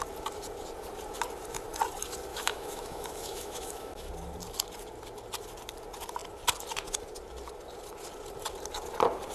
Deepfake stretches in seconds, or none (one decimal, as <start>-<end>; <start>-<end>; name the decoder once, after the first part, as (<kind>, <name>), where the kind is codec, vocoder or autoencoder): 2.3-4.1 (autoencoder, DAC-VAE)